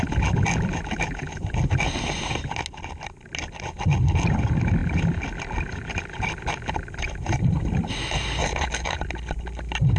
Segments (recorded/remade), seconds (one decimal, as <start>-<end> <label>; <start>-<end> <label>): 0.0-10.0 recorded